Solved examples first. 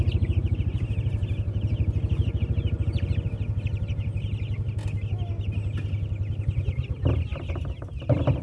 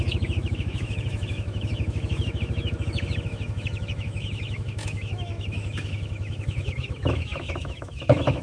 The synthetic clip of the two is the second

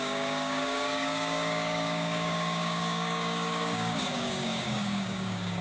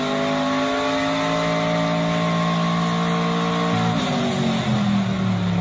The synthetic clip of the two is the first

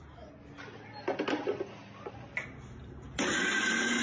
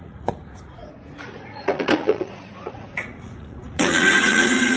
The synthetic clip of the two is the second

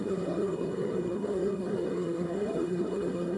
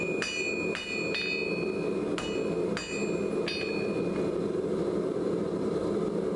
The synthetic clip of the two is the first